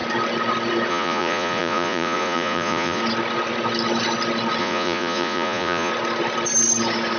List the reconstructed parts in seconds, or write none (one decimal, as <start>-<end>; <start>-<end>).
0.9-3.0; 4.6-5.9